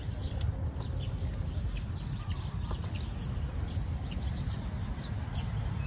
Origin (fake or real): real